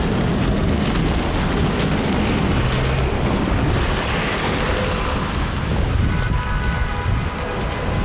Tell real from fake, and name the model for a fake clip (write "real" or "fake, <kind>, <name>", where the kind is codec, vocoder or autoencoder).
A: real